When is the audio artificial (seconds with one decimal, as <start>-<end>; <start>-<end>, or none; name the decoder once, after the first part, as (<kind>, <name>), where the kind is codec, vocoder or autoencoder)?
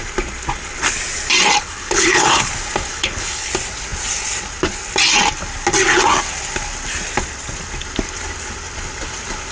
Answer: 1.6-2.5 (codec, HILCodec); 2.9-3.5